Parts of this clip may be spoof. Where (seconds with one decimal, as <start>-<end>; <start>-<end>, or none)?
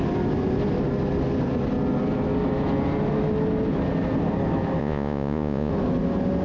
4.8-5.7